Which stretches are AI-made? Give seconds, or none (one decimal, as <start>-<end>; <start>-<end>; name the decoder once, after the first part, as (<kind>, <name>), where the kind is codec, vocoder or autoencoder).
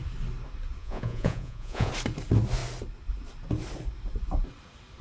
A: 0.8-1.9 (vocoder, Vocos)